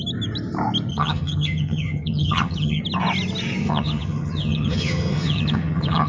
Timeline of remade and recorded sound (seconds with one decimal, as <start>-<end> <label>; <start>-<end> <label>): 0.0-0.9 recorded; 0.9-2.8 remade; 2.8-3.6 recorded; 3.6-6.1 remade